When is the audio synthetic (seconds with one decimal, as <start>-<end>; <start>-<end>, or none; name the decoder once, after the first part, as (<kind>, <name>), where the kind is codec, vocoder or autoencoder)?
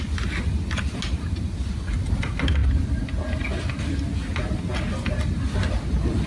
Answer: none